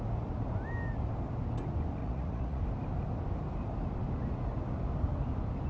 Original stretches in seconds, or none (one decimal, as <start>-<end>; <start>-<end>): 0.0-2.0; 2.6-5.7